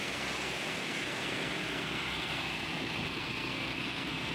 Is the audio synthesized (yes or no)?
yes